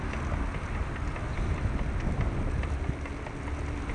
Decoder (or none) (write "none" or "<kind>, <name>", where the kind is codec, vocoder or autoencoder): none